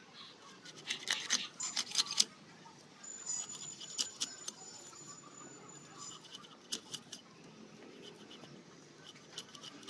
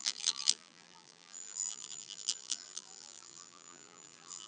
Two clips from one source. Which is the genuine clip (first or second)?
first